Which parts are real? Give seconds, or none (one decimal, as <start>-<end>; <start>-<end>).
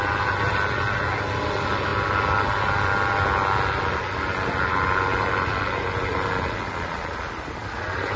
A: 0.0-8.2